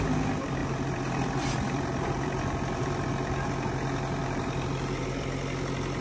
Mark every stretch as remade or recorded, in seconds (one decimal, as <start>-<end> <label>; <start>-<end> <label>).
0.0-0.6 recorded; 0.6-3.1 remade; 3.1-4.2 recorded; 4.2-5.0 remade; 5.0-6.0 recorded